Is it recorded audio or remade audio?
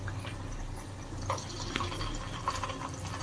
recorded